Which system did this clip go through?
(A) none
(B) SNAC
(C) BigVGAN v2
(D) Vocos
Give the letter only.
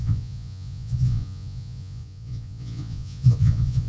D